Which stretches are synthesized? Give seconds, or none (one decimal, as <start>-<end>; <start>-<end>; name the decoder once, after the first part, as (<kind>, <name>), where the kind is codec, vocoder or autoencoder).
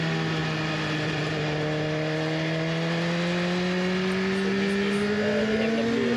0.4-1.2 (vocoder, BigVGAN v2)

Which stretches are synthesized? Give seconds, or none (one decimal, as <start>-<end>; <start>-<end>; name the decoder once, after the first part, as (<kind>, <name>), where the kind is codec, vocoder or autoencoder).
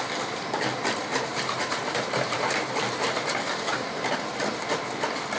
1.1-4.3 (vocoder, BigVGAN v2)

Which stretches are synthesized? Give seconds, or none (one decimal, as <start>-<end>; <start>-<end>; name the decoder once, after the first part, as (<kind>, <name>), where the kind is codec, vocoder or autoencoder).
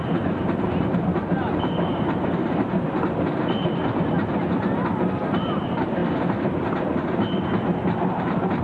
0.0-6.0 (vocoder, BigVGAN v2); 8.1-8.6